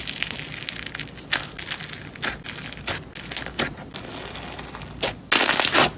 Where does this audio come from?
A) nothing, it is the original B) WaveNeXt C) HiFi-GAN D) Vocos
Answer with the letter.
A